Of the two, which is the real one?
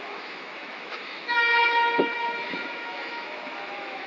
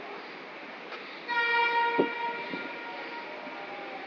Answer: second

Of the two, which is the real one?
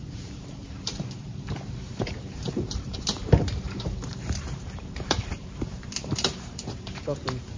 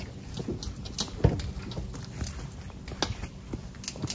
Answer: second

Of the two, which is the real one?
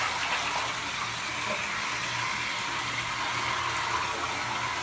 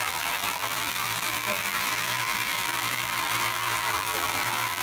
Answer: first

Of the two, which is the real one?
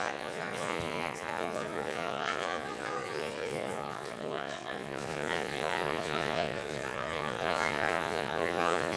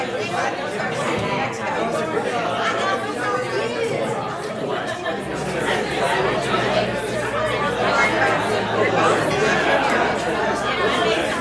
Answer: second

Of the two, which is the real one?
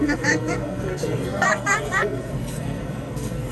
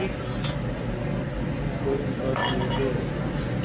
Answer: second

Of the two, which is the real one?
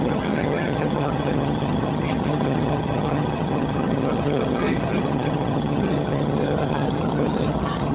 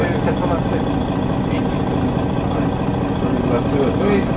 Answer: second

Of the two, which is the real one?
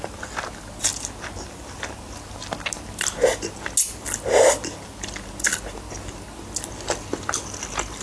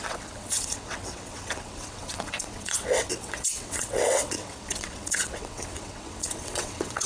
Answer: first